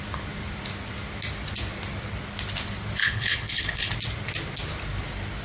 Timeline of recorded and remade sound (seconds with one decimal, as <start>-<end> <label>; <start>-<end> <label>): 0.0-3.0 recorded; 3.0-3.9 remade; 3.9-5.4 recorded